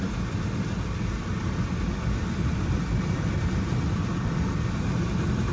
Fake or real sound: real